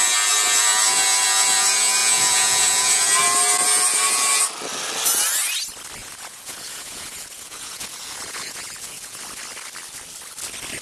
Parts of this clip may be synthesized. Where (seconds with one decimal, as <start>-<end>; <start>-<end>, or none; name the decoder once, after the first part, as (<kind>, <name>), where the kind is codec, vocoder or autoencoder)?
2.0-3.0 (vocoder, Vocos); 6.0-9.2